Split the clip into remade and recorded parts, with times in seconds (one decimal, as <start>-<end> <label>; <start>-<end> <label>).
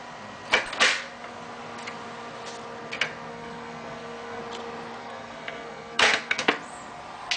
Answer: 0.0-3.3 recorded; 3.3-4.4 remade; 4.4-5.0 recorded; 5.0-6.5 remade; 6.5-7.4 recorded